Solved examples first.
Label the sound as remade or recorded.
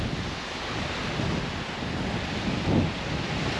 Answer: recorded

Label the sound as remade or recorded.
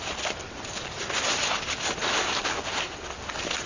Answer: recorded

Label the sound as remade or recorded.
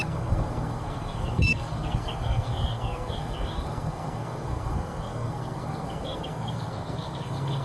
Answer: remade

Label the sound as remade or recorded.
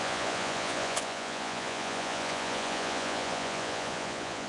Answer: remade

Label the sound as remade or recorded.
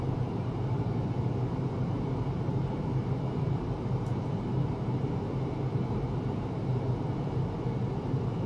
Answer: remade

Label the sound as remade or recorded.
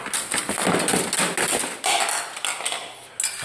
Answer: recorded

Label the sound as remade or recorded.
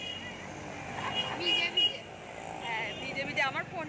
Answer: recorded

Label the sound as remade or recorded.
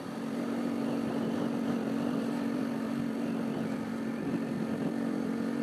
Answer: remade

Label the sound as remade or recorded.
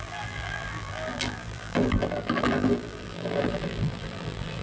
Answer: remade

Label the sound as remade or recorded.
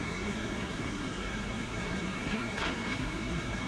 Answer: remade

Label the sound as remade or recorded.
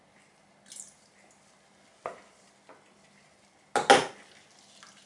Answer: recorded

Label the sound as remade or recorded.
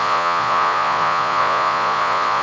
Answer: remade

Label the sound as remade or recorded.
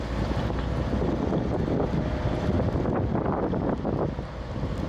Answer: recorded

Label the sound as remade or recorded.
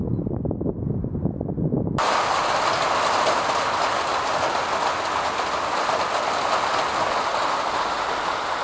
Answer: recorded